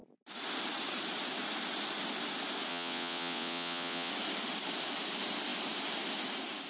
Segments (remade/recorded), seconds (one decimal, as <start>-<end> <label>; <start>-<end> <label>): 0.0-2.7 recorded; 2.7-4.1 remade; 4.1-6.7 recorded